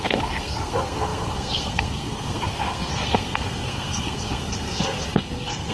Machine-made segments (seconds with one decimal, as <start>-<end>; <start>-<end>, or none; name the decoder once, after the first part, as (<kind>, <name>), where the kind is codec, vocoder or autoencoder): 0.0-5.7 (codec, SNAC)